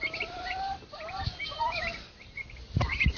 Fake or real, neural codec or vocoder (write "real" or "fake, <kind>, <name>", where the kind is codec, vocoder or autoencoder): real